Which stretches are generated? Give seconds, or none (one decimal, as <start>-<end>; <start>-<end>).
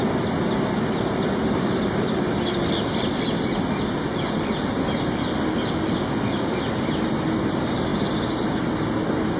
none